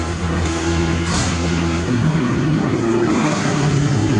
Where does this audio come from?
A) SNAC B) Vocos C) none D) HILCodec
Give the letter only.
A